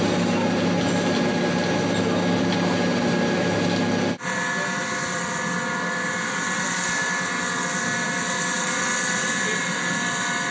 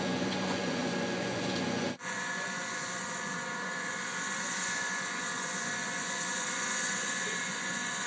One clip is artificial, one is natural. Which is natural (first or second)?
first